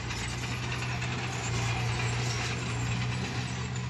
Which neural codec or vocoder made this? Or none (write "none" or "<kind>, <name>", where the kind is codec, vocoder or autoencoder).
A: none